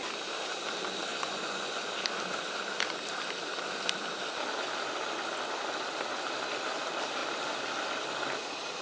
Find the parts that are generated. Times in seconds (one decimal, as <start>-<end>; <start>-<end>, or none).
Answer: 1.1-1.9